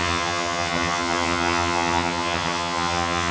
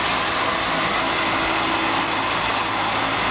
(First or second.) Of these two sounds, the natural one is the second